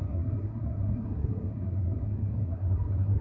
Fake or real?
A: fake